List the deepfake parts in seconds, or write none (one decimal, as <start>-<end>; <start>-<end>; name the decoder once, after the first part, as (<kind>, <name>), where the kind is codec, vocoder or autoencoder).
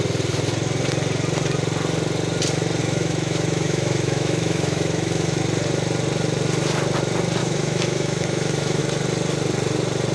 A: 2.8-5.4 (autoencoder, DAC-VAE); 7.4-8.8